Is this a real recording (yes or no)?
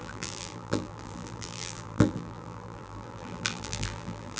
no